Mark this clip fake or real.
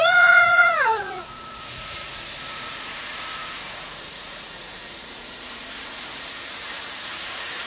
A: fake